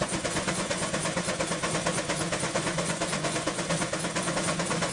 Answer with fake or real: fake